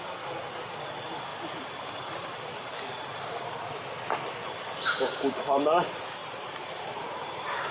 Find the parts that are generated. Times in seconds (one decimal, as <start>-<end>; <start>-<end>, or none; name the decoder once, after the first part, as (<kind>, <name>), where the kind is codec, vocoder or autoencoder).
1.3-3.8 (vocoder, BigVGAN v2); 6.2-7.7